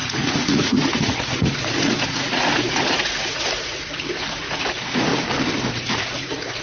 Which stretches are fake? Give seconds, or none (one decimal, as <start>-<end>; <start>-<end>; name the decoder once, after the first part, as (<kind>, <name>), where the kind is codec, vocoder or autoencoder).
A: 0.0-5.1 (vocoder, Vocos); 5.7-6.6